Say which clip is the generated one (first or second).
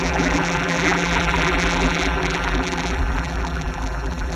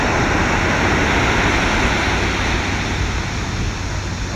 first